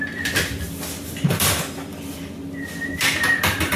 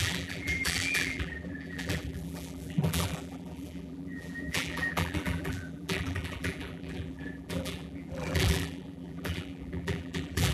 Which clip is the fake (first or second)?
second